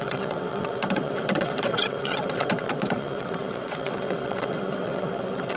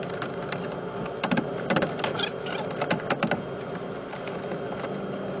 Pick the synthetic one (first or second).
first